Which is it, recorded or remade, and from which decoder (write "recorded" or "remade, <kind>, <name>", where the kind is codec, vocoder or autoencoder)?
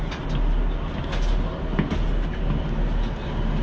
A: recorded